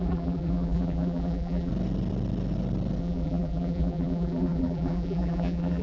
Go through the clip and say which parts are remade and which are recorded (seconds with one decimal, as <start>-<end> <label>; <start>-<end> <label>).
0.0-1.7 remade; 1.7-3.0 recorded; 3.0-5.8 remade